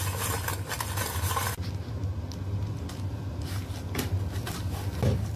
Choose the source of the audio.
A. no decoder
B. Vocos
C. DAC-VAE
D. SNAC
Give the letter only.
A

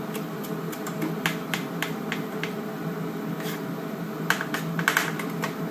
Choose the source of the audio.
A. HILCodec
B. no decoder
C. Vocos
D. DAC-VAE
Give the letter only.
B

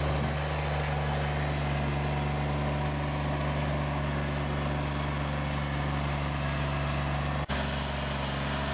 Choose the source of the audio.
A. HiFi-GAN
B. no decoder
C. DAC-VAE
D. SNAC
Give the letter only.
B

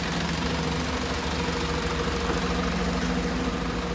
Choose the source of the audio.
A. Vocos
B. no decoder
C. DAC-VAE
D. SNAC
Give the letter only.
B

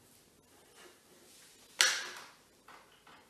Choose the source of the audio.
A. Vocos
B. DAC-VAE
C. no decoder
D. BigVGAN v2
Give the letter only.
C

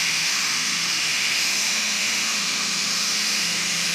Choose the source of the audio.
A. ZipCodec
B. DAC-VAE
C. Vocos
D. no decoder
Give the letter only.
B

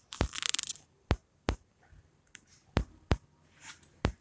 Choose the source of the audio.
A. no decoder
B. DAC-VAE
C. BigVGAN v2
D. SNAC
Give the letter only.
A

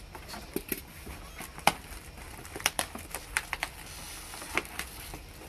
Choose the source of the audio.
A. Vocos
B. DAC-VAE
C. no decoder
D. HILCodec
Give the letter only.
C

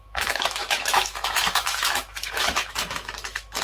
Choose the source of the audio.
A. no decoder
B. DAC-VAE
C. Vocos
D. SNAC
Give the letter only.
B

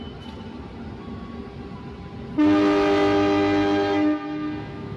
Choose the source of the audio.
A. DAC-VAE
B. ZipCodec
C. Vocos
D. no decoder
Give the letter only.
D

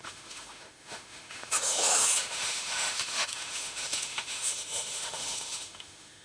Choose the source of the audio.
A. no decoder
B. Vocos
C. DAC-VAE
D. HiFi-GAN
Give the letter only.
C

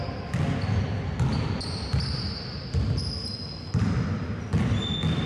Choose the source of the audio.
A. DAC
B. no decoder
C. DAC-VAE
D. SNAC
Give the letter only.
B